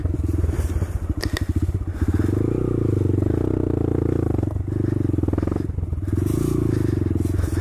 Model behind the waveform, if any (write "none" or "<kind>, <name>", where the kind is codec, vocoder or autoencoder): none